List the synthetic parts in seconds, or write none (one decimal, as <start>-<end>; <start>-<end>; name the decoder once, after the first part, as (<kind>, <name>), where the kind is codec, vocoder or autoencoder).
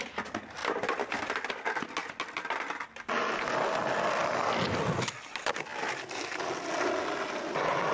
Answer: none